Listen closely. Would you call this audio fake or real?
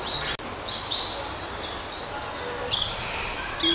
real